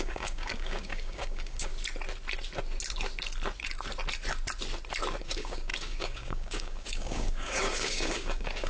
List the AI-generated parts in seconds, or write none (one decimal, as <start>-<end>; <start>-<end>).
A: 0.0-1.7; 5.2-8.7

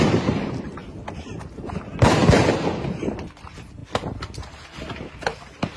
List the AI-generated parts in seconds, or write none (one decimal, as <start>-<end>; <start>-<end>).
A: 0.0-0.8; 1.7-3.8; 4.5-5.3

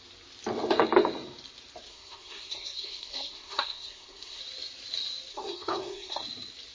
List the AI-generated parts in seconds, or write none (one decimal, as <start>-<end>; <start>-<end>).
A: 1.9-4.4; 5.3-6.2

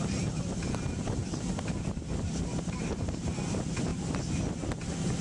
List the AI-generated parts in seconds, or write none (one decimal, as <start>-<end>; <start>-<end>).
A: 1.2-2.8

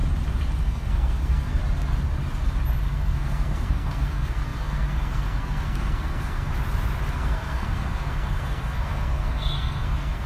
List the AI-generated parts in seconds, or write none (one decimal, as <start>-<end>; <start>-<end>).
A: 0.6-1.6; 2.9-6.5; 7.1-10.3

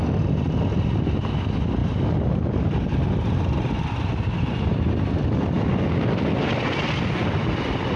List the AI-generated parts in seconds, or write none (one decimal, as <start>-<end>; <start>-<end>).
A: none